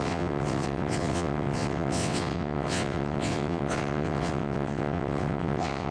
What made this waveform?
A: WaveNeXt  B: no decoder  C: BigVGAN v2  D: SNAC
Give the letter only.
A